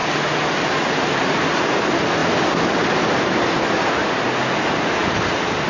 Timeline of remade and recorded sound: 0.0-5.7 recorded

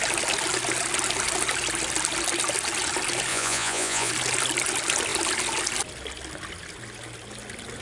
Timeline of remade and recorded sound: 0.0-3.3 recorded; 3.3-4.1 remade; 4.1-7.8 recorded

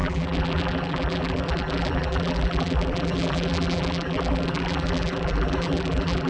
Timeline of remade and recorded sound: 0.0-6.3 remade

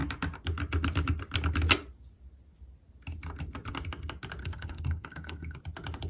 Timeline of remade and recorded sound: 0.0-4.4 recorded; 4.4-5.6 remade; 5.6-6.1 recorded

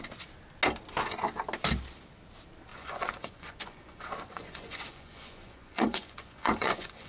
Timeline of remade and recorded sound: 0.0-2.7 recorded; 2.7-7.1 remade

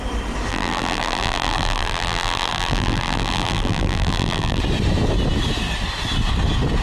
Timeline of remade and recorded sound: 0.0-0.5 recorded; 0.5-4.6 remade; 4.6-6.8 recorded